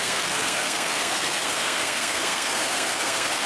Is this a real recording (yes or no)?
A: no